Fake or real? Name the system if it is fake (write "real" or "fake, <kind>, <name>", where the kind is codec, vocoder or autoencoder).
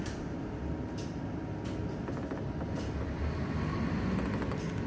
real